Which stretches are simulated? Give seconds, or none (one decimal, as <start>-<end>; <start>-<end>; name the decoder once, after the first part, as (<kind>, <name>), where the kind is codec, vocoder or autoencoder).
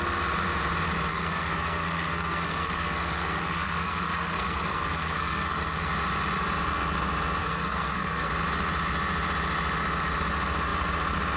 1.1-5.9 (codec, SNAC); 7.4-8.3